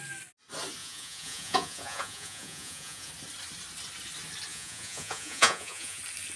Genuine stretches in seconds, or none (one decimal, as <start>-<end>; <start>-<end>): 0.0-0.8; 3.1-4.5; 6.0-6.4